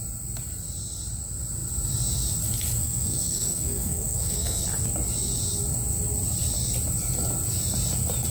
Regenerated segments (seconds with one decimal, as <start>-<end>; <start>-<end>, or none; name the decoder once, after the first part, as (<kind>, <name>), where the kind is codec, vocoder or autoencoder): 2.8-4.6 (codec, SNAC)